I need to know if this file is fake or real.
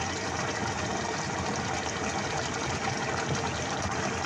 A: real